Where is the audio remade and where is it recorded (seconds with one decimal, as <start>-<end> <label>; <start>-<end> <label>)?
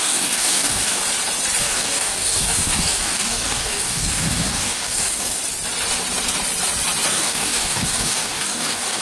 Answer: 0.0-1.0 remade; 1.0-1.6 recorded; 1.6-5.4 remade; 5.4-7.1 recorded; 7.1-9.0 remade